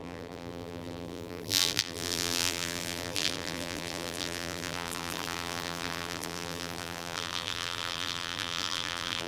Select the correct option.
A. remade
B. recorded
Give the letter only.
A